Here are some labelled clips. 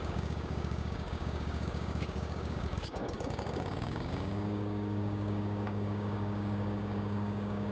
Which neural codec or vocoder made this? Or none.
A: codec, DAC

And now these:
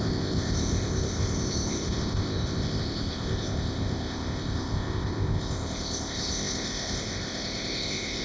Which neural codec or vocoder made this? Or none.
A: codec, ZipCodec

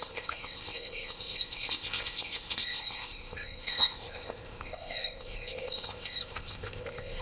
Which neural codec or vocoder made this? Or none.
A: codec, ZipCodec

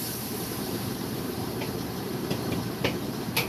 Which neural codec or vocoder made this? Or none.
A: vocoder, BigVGAN v2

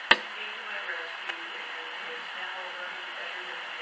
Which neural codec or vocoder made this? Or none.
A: none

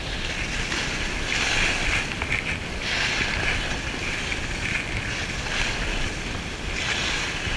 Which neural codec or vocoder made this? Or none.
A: none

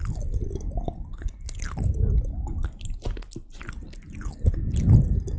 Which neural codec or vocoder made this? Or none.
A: none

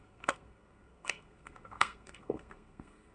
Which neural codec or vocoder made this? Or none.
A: codec, SNAC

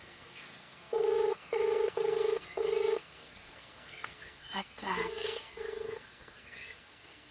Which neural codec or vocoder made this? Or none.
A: codec, SNAC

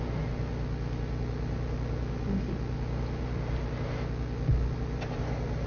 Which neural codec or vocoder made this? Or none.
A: none